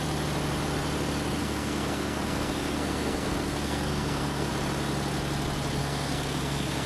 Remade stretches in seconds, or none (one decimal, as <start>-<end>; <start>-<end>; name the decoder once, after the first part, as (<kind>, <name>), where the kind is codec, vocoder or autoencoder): 1.4-4.5 (codec, SNAC); 5.8-6.9